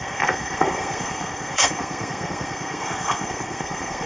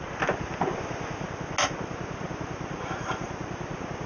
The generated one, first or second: first